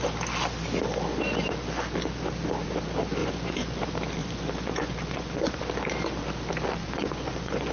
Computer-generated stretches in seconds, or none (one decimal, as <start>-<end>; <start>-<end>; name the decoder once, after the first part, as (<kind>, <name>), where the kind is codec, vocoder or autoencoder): 3.2-3.8 (vocoder, Vocos); 4.2-5.6; 6.8-7.7

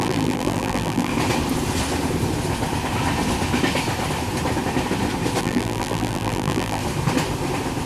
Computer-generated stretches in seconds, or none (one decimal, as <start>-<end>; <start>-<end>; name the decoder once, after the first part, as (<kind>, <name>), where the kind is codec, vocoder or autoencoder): 0.0-1.1 (vocoder, BigVGAN v2); 5.4-6.8

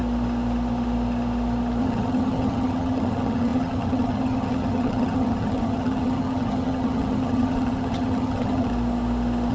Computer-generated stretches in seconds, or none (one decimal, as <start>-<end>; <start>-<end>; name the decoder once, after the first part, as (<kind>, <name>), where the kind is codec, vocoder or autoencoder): 1.8-8.7 (vocoder, HiFi-GAN)

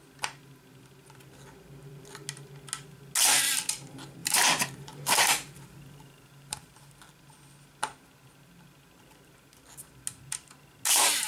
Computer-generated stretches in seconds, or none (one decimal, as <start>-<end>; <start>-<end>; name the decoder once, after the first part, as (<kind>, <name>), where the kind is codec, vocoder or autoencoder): 4.2-6.8 (vocoder, BigVGAN v2)

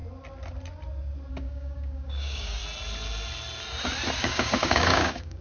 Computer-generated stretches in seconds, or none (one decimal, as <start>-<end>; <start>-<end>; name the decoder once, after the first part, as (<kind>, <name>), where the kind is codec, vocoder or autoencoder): 1.3-2.6 (codec, DAC); 4.2-5.4